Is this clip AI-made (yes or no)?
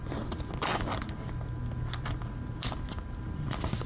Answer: no